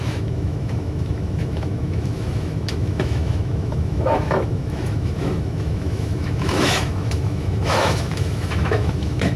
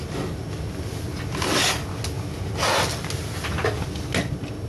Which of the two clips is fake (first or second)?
first